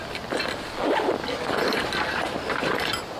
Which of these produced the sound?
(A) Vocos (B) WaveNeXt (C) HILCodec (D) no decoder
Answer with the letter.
D